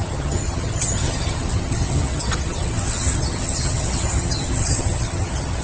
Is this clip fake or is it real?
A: fake